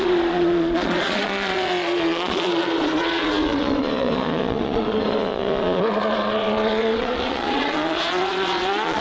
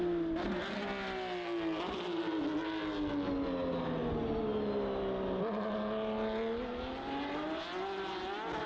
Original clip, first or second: second